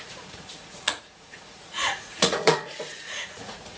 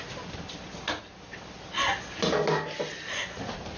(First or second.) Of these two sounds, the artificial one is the first